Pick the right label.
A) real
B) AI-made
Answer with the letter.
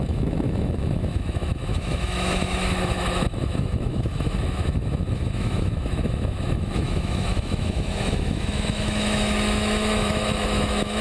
B